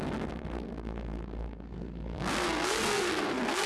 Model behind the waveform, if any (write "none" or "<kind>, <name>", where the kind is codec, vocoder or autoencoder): codec, SNAC